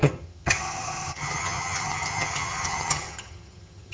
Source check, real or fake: fake